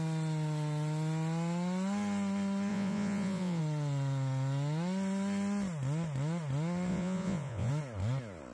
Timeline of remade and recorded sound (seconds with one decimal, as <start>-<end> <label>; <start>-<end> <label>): 0.0-2.7 recorded; 2.7-3.6 remade; 3.6-6.9 recorded; 6.9-7.7 remade; 7.7-8.5 recorded